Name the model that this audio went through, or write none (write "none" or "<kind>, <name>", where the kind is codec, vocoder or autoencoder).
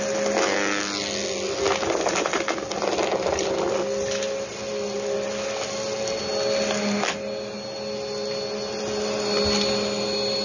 none